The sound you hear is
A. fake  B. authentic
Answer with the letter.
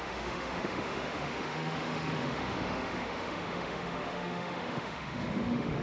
A